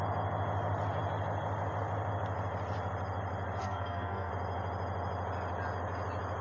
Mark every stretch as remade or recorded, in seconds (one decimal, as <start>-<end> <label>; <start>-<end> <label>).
0.0-3.6 recorded; 3.6-4.3 remade; 4.3-6.4 recorded